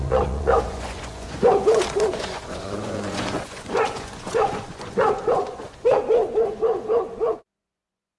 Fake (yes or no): yes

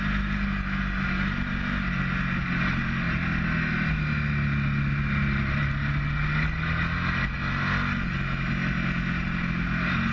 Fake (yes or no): no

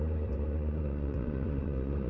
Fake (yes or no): yes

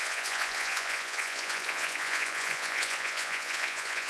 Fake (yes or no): yes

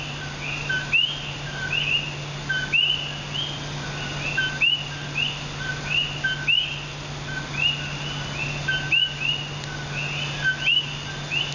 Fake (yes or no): no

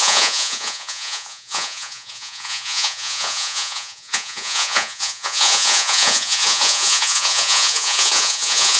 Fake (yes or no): yes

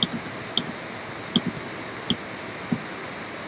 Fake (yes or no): no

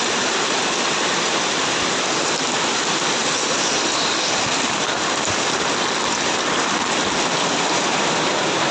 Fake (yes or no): no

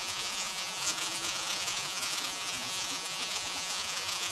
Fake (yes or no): yes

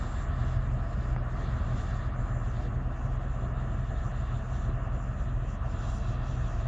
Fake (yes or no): no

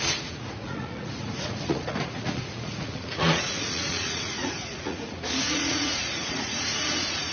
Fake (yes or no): yes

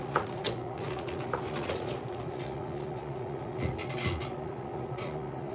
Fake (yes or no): yes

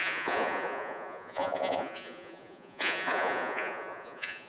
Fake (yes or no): yes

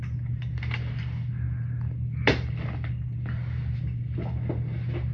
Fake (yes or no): no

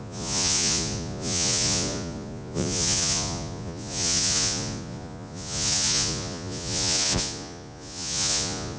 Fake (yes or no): yes